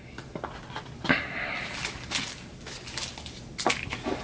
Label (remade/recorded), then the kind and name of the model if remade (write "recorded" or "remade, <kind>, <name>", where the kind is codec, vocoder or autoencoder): recorded